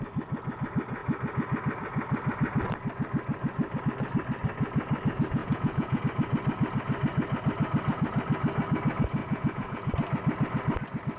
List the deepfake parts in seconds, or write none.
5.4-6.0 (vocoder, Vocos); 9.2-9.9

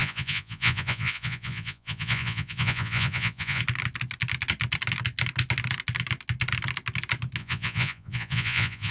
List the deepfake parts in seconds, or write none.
0.0-3.6 (vocoder, Vocos); 7.4-8.9